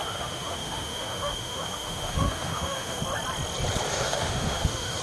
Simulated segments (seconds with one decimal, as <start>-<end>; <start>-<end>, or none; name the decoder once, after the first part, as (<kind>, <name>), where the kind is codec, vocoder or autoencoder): 0.0-3.0 (autoencoder, DAC-VAE); 3.9-5.0